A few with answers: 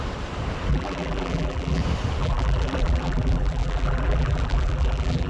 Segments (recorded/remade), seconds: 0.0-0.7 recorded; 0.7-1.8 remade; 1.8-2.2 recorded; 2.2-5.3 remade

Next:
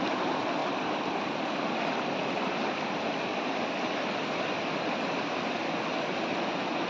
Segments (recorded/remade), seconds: 0.0-0.6 recorded; 0.6-2.3 remade; 2.3-3.3 recorded; 3.3-5.4 remade; 5.4-6.9 recorded

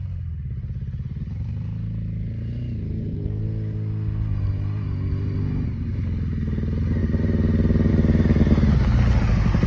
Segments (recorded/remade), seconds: 0.0-2.9 recorded; 2.9-3.4 remade; 3.4-9.7 recorded